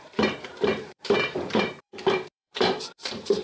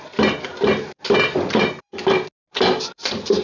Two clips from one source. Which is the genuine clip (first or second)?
second